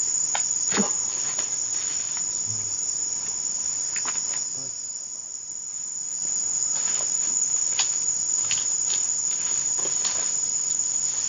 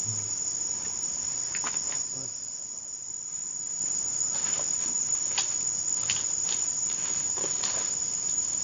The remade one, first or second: second